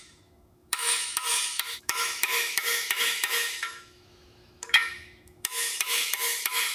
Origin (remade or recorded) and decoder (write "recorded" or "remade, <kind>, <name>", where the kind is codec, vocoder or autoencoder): remade, autoencoder, DAC-VAE